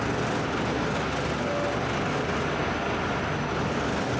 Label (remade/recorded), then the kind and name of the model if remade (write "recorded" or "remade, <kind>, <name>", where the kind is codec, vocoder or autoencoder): recorded